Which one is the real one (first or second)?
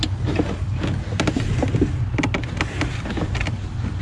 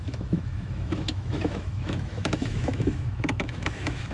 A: first